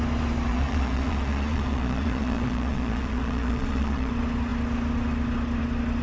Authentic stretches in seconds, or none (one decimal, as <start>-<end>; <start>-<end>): 0.0-0.5; 4.1-6.0